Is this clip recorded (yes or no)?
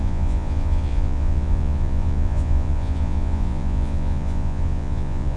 no